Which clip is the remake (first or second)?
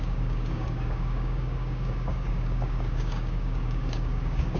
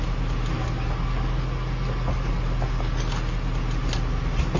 first